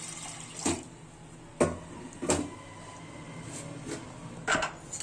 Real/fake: real